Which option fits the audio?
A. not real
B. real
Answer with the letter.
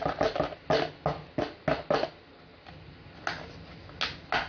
B